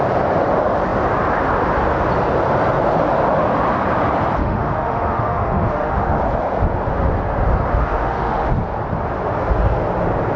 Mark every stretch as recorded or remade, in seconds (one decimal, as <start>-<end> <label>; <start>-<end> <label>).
0.0-4.4 recorded; 4.4-6.2 remade; 6.2-7.7 recorded; 7.7-8.5 remade; 8.5-10.4 recorded